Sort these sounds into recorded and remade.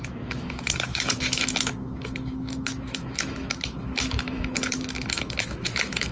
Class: remade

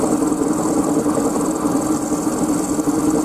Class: recorded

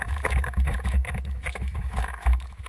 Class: remade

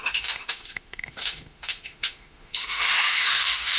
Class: remade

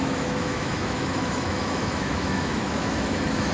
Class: remade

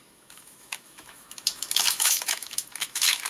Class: remade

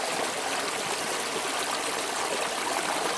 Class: recorded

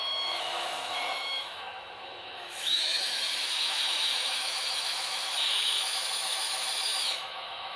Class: remade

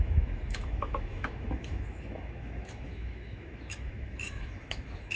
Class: remade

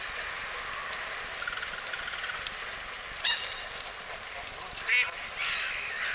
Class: recorded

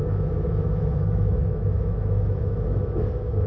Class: remade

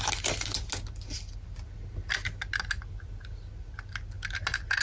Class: recorded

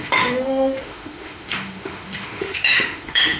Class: remade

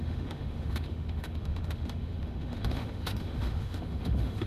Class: remade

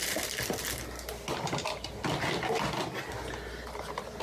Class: recorded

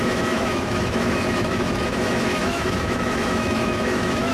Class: remade